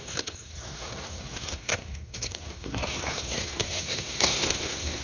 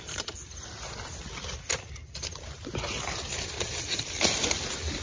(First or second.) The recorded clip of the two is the second